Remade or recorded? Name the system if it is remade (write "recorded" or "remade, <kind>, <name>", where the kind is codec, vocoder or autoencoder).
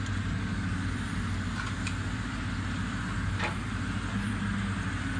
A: recorded